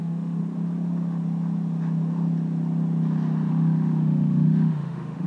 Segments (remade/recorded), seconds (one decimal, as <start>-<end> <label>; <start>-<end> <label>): 0.0-0.4 remade; 0.4-3.5 recorded; 3.5-5.3 remade